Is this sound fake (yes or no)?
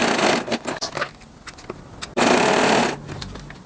no